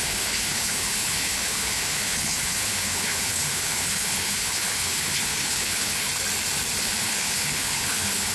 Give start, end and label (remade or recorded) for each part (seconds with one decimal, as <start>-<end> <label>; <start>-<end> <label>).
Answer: 0.0-6.1 remade; 6.1-6.8 recorded; 6.8-8.3 remade